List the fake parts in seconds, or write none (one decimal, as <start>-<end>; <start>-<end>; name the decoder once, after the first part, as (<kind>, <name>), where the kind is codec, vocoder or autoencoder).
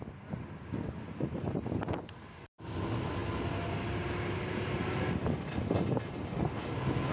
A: none